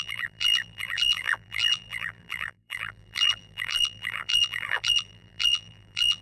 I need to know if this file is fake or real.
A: fake